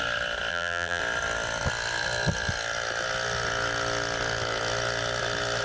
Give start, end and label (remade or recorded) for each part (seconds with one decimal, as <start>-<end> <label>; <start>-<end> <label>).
0.0-0.5 recorded; 0.5-1.0 remade; 1.0-5.6 recorded